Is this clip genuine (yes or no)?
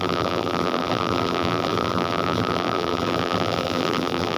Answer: no